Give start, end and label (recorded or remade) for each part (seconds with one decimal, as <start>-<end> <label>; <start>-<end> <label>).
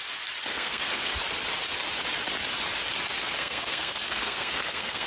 0.0-0.5 recorded; 0.5-1.1 remade; 1.1-3.2 recorded; 3.2-5.1 remade